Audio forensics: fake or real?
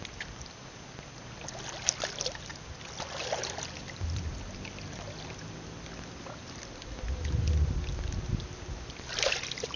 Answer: real